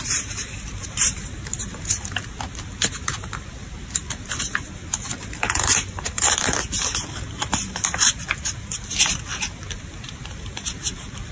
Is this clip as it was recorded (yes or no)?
no